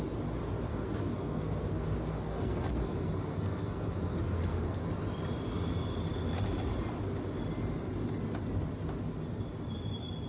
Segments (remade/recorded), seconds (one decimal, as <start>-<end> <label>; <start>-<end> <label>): 0.0-0.7 recorded; 0.7-4.9 remade; 4.9-10.3 recorded